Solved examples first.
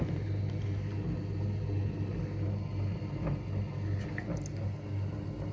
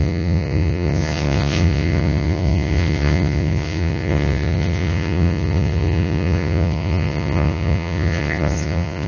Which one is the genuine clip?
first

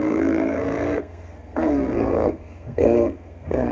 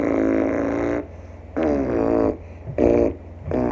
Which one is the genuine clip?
second